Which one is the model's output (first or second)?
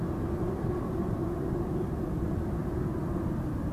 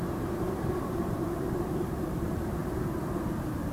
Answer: second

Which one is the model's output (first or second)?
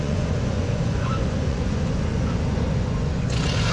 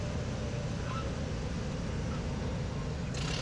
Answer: first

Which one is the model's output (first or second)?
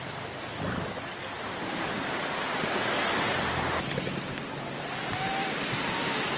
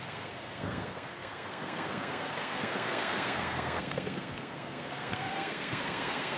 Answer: second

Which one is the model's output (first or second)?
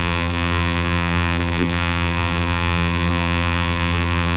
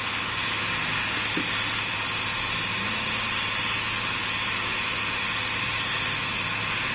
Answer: first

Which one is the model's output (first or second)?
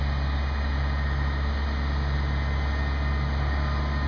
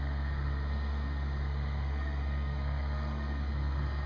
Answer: second